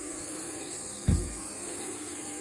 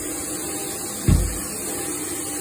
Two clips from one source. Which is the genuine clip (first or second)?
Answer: second